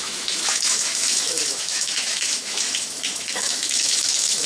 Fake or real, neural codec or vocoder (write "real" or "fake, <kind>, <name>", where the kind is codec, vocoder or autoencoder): fake, autoencoder, DAC-VAE